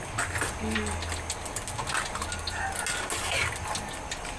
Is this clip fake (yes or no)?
no